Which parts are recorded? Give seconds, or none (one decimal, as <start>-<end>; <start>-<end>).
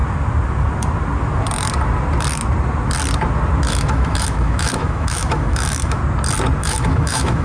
0.0-3.7; 6.0-6.6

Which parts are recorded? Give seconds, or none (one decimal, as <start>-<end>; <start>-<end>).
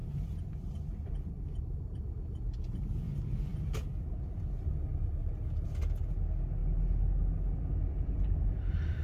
0.5-9.0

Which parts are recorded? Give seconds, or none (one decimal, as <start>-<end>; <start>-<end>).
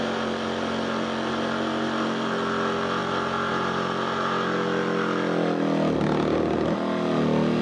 0.0-7.6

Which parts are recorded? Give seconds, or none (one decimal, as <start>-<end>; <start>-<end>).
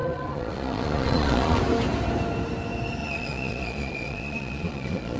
1.6-3.0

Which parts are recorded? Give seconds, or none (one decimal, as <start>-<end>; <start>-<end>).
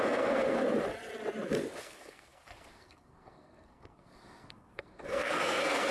0.6-1.8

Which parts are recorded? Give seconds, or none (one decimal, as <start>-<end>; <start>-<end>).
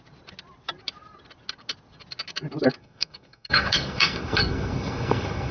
0.0-2.8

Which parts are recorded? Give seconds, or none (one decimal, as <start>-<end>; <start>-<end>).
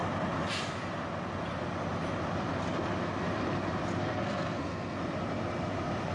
0.0-4.0; 5.0-6.1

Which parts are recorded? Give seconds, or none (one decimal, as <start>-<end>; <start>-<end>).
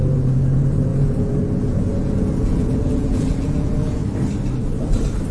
4.0-5.3